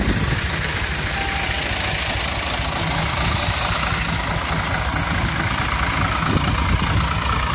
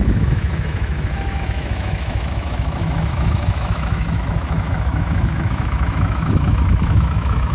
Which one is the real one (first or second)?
first